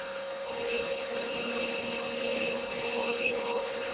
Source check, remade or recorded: remade